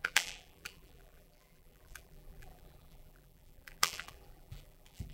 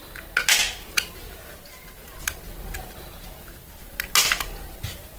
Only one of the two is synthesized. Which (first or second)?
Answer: first